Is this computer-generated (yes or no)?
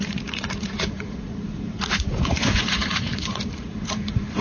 yes